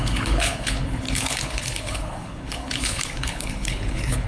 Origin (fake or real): fake